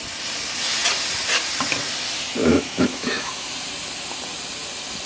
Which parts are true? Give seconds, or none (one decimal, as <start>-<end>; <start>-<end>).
0.0-2.4; 3.3-5.1